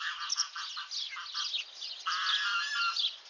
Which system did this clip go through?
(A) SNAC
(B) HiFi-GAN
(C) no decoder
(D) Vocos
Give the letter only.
C